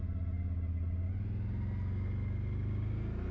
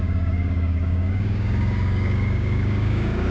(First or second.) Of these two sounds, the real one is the first